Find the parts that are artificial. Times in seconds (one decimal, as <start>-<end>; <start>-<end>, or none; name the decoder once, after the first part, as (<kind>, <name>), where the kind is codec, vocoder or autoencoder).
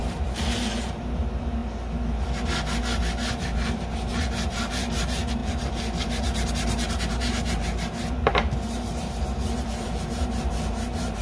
0.0-1.6 (vocoder, BigVGAN v2); 3.3-11.2